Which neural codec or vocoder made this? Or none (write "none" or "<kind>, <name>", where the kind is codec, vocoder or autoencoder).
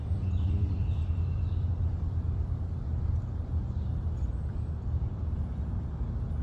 none